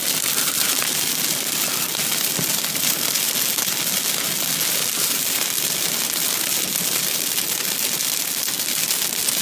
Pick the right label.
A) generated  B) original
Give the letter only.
B